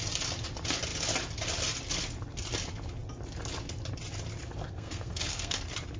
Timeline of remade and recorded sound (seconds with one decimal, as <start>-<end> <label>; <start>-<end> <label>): 0.0-4.6 recorded; 4.6-5.6 remade; 5.6-6.0 recorded